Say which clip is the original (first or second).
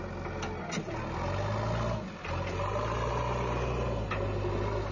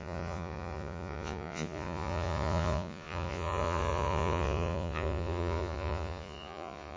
first